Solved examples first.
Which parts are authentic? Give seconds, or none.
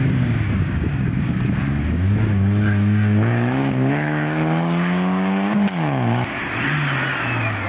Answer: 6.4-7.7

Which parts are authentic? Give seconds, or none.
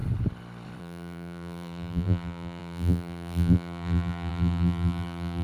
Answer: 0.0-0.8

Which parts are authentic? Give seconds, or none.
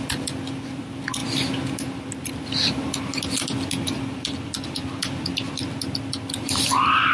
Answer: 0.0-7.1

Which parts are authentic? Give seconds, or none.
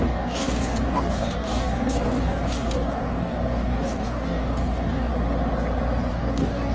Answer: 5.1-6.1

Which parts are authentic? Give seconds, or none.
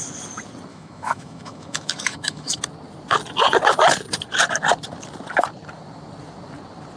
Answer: 0.0-0.7; 2.6-7.0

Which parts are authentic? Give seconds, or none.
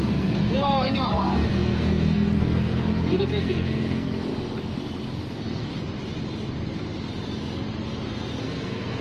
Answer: 4.3-5.2; 5.7-8.4